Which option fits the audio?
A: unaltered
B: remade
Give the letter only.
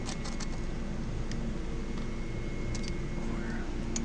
A